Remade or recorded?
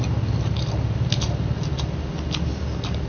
recorded